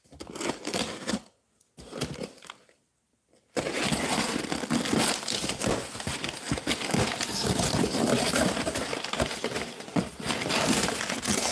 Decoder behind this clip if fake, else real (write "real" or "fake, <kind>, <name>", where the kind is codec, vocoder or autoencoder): real